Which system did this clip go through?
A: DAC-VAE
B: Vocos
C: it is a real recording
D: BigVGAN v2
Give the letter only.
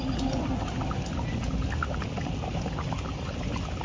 C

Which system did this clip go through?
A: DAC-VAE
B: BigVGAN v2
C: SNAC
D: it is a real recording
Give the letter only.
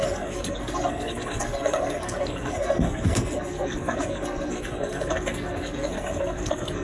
C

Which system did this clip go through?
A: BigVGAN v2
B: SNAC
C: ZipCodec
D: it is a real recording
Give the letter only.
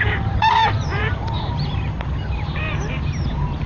A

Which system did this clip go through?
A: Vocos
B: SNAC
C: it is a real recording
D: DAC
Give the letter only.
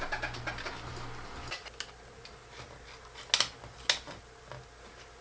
C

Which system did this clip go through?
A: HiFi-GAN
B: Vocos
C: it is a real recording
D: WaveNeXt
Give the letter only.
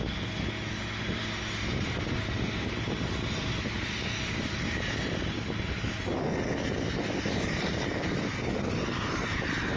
C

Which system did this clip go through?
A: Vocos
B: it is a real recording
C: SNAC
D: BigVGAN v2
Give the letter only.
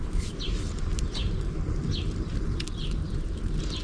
B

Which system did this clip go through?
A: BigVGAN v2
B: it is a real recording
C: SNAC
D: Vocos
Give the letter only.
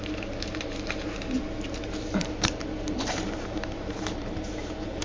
A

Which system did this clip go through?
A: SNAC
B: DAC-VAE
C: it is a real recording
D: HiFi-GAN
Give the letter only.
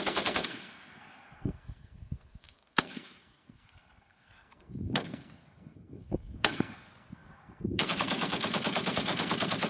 A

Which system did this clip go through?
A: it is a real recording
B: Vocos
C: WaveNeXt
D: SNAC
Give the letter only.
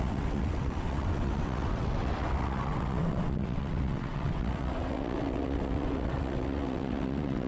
C